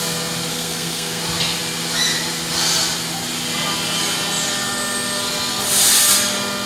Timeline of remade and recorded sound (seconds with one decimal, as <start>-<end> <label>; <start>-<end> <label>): 0.0-0.5 recorded; 0.5-1.2 remade; 1.2-6.7 recorded

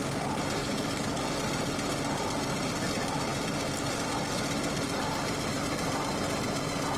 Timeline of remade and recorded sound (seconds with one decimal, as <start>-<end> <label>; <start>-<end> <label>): 0.0-0.6 recorded; 0.6-1.2 remade; 1.2-7.0 recorded

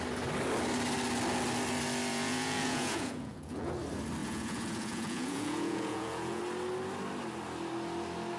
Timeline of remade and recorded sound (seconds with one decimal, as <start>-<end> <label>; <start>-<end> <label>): 0.0-2.1 recorded; 2.1-3.7 remade; 3.7-4.2 recorded; 4.2-6.4 remade; 6.4-8.4 recorded

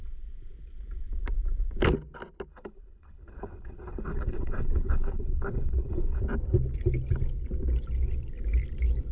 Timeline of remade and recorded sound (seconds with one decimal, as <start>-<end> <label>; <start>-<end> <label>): 0.0-2.5 recorded; 2.5-6.2 remade; 6.2-9.1 recorded

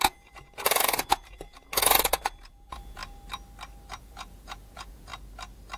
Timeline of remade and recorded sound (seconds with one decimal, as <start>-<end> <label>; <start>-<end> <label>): 0.0-3.0 remade; 3.0-4.0 recorded; 4.0-5.1 remade; 5.1-5.8 recorded